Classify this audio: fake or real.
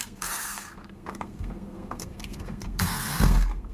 fake